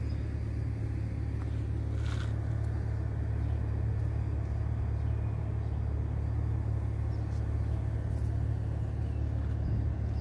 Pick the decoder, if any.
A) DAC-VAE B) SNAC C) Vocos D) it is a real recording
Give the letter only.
D